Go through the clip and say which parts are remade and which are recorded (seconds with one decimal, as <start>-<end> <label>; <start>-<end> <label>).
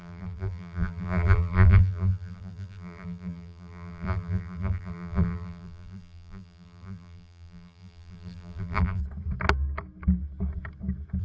0.0-9.0 remade; 9.0-11.2 recorded